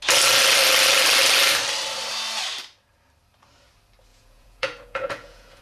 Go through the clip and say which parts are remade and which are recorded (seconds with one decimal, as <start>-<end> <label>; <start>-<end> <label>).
0.0-4.1 recorded; 4.1-5.6 remade